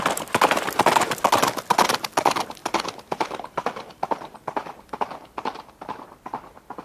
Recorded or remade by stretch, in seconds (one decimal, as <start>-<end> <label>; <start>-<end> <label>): 0.0-6.8 recorded

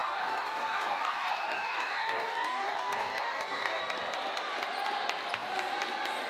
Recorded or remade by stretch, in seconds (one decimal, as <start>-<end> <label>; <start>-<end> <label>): 0.0-3.8 remade; 3.8-6.3 recorded

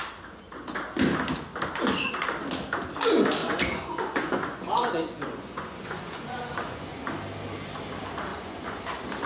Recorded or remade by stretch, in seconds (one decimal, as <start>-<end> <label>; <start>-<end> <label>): 0.0-3.4 recorded; 3.4-7.1 remade; 7.1-8.3 recorded; 8.3-8.8 remade; 8.8-9.3 recorded

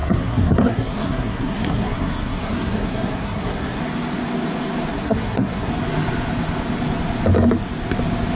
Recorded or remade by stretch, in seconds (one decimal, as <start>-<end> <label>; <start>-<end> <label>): 0.0-3.8 remade; 3.8-4.9 recorded; 4.9-5.7 remade; 5.7-8.3 recorded

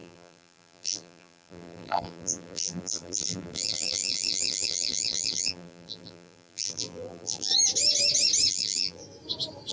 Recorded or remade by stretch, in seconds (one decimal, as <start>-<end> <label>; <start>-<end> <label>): 0.0-7.5 remade; 7.5-8.5 recorded; 8.5-9.0 remade; 9.0-9.7 recorded

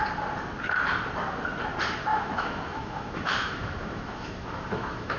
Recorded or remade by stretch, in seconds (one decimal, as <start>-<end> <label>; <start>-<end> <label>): 0.0-2.1 recorded; 2.1-5.2 remade

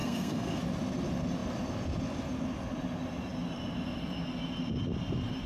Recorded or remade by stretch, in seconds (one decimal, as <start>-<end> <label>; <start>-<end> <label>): 0.0-0.6 remade; 0.6-5.5 recorded

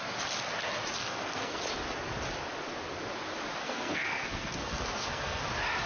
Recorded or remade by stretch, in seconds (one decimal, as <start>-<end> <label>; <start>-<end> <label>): 0.0-1.0 recorded; 1.0-1.6 remade; 1.6-3.6 recorded; 3.6-5.4 remade; 5.4-5.9 recorded